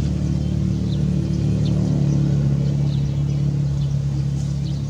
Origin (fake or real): real